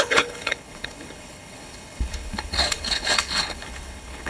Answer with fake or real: fake